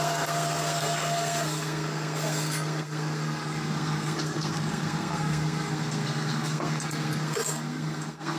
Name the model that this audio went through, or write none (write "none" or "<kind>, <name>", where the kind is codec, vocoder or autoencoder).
codec, SNAC